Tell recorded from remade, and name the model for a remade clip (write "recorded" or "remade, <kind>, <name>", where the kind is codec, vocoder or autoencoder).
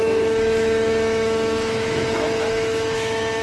remade, autoencoder, DAC-VAE